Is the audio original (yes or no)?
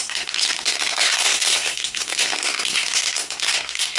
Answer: no